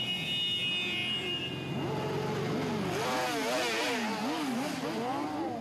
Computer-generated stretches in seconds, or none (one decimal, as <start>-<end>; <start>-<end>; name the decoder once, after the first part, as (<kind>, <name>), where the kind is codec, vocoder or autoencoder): none